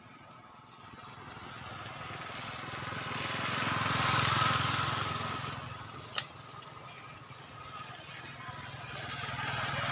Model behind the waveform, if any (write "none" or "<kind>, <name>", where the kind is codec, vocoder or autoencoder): none